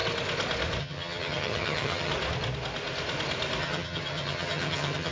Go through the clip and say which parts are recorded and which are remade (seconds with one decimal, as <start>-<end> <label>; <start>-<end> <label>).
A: 0.0-0.8 recorded; 0.8-2.1 remade; 2.1-3.6 recorded; 3.6-5.1 remade